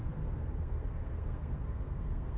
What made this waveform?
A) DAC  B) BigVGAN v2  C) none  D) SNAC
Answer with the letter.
D